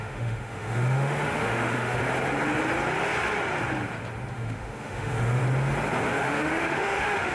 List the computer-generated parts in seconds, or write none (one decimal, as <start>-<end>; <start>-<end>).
0.0-2.0; 4.3-5.4; 6.1-7.3